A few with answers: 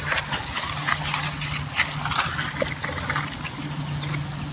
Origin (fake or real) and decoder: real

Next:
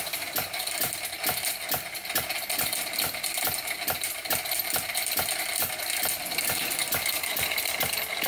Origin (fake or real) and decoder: fake, vocoder, BigVGAN v2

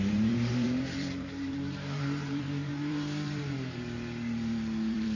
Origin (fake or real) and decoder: fake, vocoder, BigVGAN v2